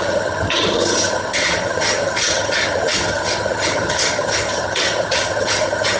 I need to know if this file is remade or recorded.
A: remade